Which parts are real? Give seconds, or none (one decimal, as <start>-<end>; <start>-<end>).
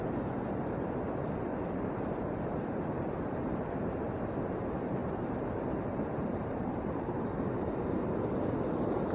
0.0-1.5; 3.8-5.0; 7.7-9.1